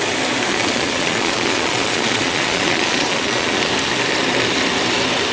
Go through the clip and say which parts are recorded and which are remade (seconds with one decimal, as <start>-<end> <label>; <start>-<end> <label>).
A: 0.0-0.5 recorded; 0.5-3.7 remade; 3.7-5.3 recorded